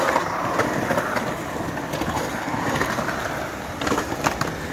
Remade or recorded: recorded